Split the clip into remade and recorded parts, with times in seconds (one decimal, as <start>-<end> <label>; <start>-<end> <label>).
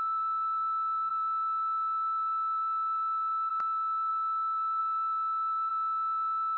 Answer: 0.0-5.7 remade; 5.7-6.6 recorded